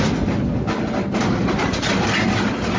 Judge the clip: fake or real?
real